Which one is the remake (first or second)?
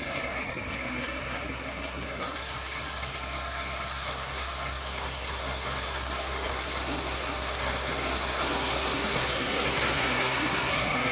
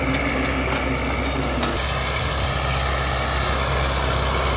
first